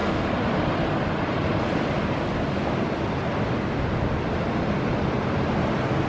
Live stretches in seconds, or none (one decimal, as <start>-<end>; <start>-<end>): 0.0-6.1

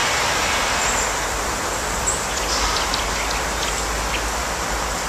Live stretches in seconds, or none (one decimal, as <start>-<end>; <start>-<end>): 0.0-5.1

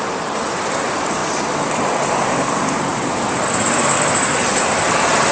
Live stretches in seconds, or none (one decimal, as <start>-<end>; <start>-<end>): none